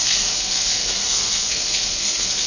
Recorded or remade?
remade